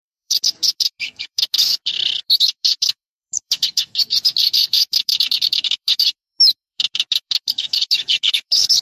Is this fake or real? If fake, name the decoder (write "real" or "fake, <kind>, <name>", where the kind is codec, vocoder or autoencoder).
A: fake, autoencoder, DAC-VAE